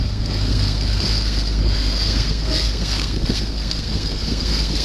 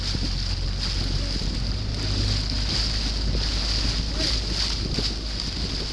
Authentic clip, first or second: second